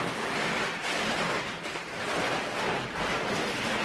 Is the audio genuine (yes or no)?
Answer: yes